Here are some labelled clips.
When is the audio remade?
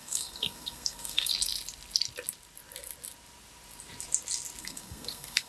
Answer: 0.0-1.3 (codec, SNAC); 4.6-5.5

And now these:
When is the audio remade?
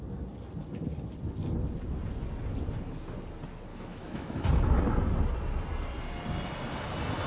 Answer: 3.7-4.4 (autoencoder, DAC-VAE)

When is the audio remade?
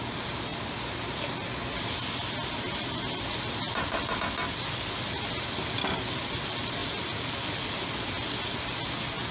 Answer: none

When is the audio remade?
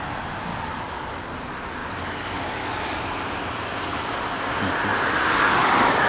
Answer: 0.5-1.1 (codec, DAC); 1.8-3.0; 4.9-6.1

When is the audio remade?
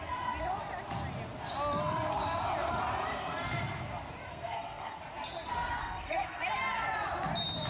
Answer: 4.3-5.0 (codec, SNAC); 5.8-6.4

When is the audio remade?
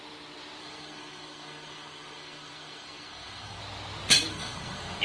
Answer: 0.6-3.6 (codec, SNAC); 4.3-5.0